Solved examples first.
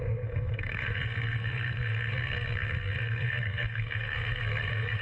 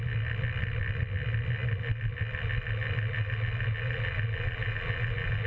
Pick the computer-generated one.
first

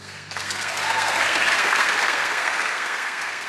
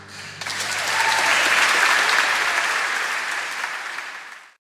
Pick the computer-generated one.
first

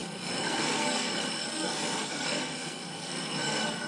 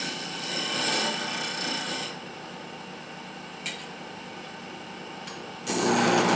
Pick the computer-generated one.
first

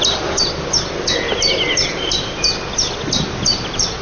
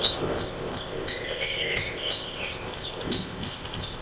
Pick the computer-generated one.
second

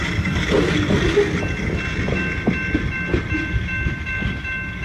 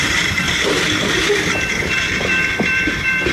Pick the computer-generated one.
second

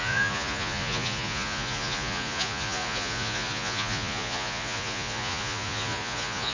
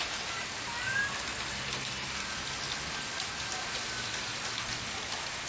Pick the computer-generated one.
first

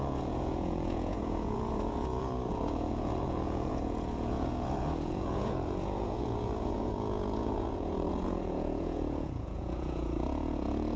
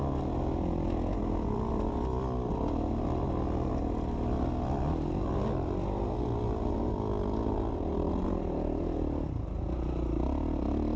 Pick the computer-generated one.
first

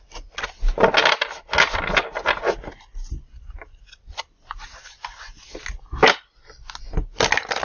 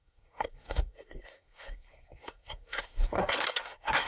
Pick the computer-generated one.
second